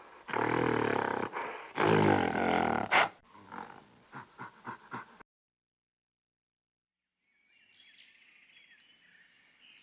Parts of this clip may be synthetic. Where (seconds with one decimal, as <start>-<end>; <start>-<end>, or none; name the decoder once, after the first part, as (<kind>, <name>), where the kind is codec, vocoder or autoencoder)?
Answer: none